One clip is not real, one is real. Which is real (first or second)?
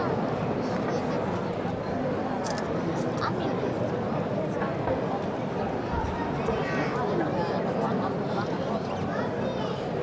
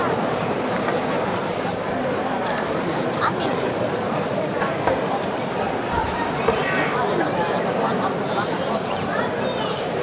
first